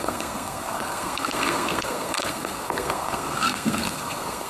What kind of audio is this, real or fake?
fake